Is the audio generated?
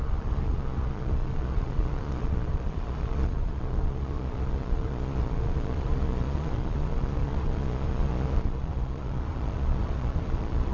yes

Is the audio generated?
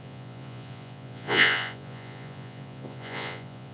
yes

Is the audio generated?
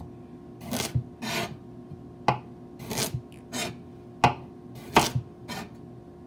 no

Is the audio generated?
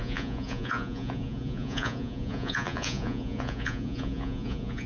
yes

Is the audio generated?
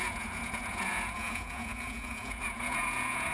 yes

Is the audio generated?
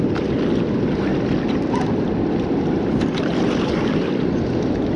no